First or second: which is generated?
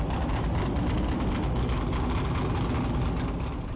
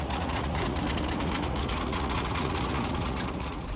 second